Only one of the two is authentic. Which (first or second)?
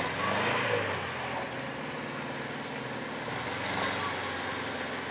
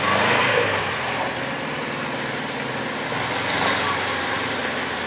first